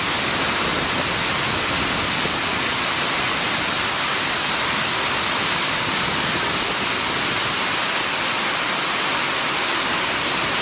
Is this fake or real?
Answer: real